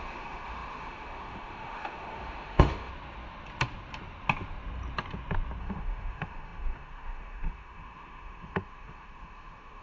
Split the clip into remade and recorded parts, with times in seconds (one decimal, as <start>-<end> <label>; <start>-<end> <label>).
0.0-2.9 remade; 2.9-5.6 recorded; 5.6-9.8 remade